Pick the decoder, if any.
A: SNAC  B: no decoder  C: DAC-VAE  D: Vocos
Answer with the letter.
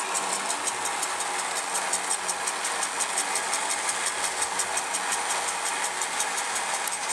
B